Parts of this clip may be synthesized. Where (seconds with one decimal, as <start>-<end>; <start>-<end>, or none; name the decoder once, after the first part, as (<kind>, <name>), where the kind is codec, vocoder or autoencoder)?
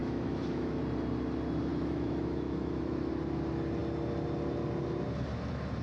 0.0-0.8 (autoencoder, DAC-VAE); 1.7-3.1